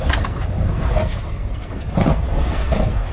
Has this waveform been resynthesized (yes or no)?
yes